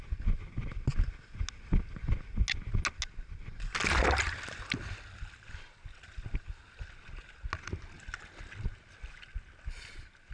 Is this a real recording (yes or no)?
yes